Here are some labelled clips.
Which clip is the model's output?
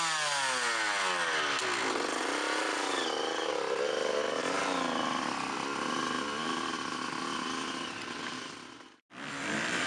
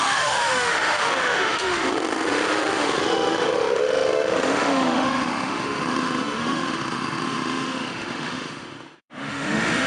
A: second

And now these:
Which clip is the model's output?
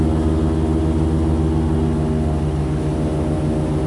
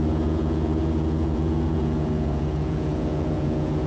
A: second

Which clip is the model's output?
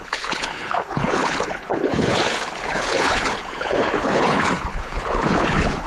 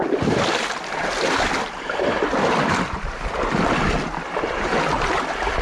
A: first